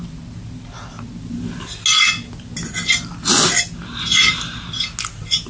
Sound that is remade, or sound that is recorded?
recorded